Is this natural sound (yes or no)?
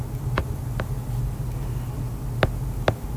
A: yes